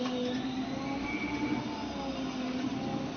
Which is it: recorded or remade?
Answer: recorded